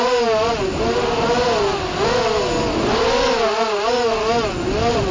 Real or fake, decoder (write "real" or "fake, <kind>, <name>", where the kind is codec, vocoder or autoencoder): real